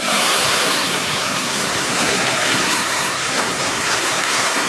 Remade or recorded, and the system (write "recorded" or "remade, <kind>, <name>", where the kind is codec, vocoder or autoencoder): remade, codec, SNAC